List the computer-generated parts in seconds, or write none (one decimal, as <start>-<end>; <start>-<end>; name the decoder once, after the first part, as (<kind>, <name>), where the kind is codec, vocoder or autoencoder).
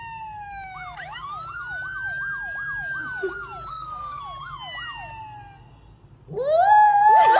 3.7-4.2 (codec, SNAC)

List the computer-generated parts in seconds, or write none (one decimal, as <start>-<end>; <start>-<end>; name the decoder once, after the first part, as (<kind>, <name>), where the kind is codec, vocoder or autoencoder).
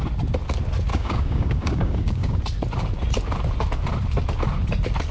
0.9-2.4 (codec, DAC)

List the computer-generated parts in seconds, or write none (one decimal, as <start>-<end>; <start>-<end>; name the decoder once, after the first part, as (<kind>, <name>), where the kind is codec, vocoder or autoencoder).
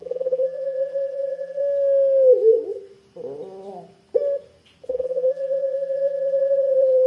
0.0-1.6 (vocoder, BigVGAN v2); 4.9-7.1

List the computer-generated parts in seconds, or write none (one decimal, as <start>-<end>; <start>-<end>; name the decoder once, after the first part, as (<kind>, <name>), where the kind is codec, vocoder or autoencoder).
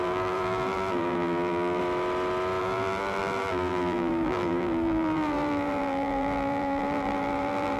0.0-1.8 (vocoder, BigVGAN v2); 2.6-7.8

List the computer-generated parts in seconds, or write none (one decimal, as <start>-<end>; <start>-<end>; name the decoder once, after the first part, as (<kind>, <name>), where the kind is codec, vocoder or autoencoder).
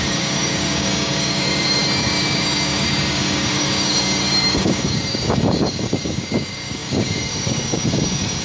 0.0-8.4 (codec, DAC)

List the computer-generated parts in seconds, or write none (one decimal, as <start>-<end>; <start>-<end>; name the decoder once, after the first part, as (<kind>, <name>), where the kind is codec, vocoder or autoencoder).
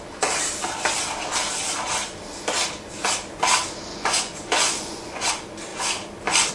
3.9-5.3 (vocoder, Vocos)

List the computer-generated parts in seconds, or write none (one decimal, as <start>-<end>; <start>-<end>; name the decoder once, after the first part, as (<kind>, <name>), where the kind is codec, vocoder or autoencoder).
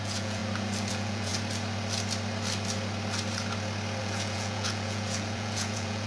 0.0-0.4 (vocoder, Vocos); 0.9-1.3; 4.0-6.1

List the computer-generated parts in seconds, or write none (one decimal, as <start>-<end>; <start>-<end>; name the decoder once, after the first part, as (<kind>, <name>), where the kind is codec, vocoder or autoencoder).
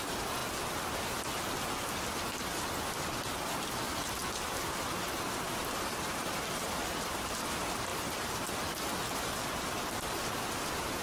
4.2-5.7 (vocoder, BigVGAN v2); 7.9-8.5